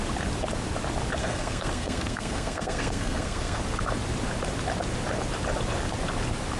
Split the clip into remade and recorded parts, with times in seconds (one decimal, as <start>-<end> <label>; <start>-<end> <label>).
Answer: 0.0-1.2 recorded; 1.2-3.6 remade; 3.6-6.6 recorded